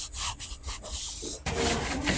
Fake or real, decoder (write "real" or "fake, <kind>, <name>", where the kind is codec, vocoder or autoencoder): real